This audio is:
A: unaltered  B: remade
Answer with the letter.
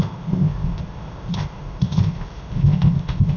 B